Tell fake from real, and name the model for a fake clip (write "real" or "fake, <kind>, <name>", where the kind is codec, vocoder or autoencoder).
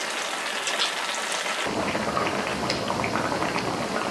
real